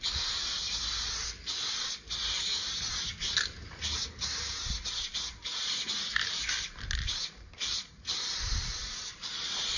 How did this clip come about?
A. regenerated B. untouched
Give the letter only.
B